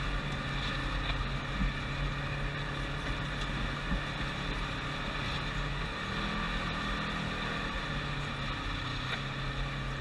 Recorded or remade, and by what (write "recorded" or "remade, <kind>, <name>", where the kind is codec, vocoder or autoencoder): recorded